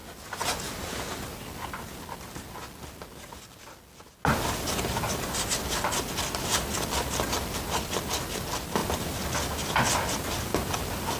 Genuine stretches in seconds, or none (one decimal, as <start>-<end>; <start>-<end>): 0.0-11.2